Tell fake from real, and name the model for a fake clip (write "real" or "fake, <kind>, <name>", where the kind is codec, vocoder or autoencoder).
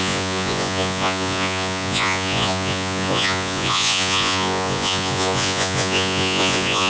fake, vocoder, Vocos